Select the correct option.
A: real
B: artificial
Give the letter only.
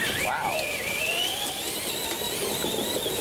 B